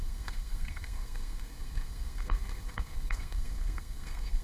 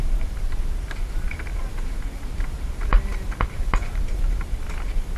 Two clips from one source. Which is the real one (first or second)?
second